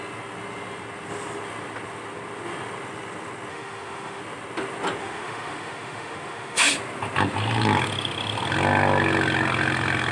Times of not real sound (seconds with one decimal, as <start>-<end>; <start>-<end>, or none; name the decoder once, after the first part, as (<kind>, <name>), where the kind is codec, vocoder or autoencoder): 3.5-4.2 (autoencoder, DAC-VAE); 5.0-6.7